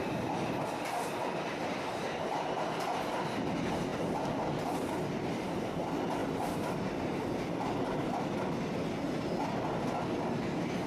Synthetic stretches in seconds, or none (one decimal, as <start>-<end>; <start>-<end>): 3.9-4.5